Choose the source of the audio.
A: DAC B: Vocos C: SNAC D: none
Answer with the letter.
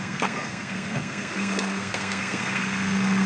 C